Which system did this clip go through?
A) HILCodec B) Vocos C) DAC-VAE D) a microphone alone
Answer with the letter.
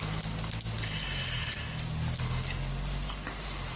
D